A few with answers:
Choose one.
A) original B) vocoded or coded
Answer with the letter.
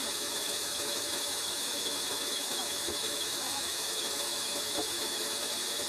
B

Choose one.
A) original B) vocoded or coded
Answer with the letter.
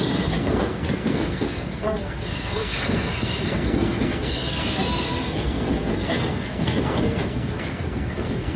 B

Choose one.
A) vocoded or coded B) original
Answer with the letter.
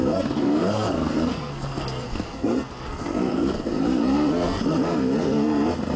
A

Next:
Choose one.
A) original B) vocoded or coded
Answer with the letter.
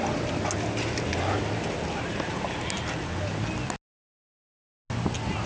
A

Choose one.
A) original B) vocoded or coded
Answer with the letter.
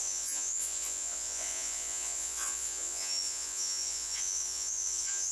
B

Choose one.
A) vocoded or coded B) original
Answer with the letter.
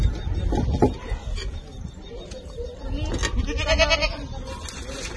B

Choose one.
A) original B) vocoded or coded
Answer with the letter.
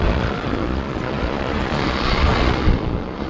B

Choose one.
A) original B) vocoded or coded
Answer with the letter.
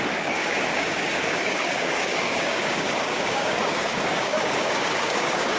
B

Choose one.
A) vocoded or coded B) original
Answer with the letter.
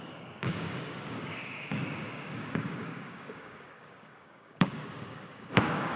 A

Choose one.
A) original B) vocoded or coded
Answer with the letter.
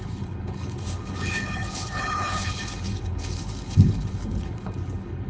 B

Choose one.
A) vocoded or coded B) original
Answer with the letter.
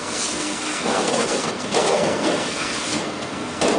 A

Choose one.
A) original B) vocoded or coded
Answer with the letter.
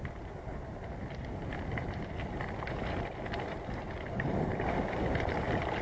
A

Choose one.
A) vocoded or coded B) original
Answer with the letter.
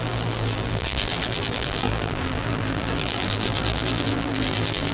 A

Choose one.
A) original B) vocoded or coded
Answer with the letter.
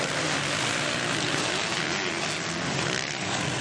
A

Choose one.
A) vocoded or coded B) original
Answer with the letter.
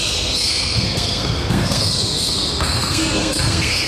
A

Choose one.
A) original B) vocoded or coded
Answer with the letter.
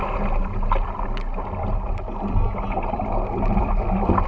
A